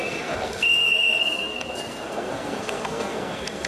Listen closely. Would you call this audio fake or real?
fake